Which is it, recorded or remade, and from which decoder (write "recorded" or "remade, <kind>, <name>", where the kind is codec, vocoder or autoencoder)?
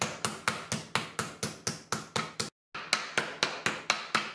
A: recorded